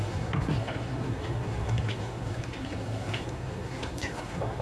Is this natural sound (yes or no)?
no